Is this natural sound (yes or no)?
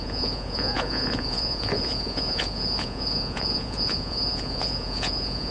no